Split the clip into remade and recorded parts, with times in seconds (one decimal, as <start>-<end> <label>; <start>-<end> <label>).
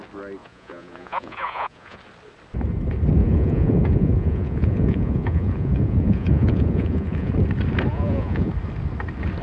0.0-0.4 recorded; 0.4-2.0 remade; 2.0-3.2 recorded; 3.2-7.3 remade; 7.3-7.9 recorded; 7.9-8.5 remade; 8.5-9.4 recorded